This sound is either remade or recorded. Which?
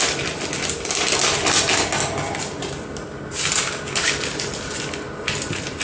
recorded